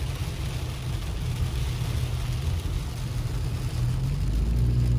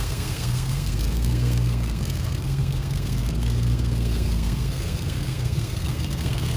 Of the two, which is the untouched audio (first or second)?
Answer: first